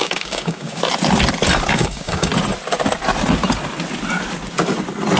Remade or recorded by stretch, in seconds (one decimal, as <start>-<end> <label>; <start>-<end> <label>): 0.0-0.8 remade; 0.8-1.7 recorded; 1.7-2.3 remade; 2.3-5.2 recorded

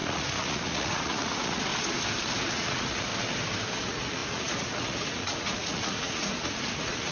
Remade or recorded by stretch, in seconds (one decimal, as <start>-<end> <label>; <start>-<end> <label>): 0.0-1.7 remade; 1.7-2.4 recorded; 2.4-3.1 remade; 3.1-3.8 recorded; 3.8-7.1 remade

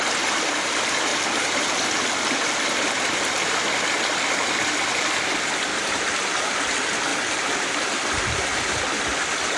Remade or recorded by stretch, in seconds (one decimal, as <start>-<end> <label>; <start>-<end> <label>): 0.0-1.1 recorded; 1.1-4.5 remade; 4.5-5.7 recorded; 5.7-6.4 remade; 6.4-7.1 recorded; 7.1-7.7 remade; 7.7-9.6 recorded